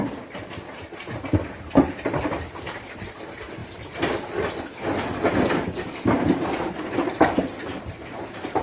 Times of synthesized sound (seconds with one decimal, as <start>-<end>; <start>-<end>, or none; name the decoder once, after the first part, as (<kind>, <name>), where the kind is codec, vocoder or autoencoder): 0.0-8.6 (vocoder, BigVGAN v2)